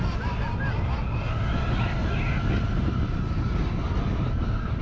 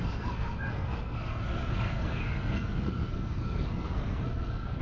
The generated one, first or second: second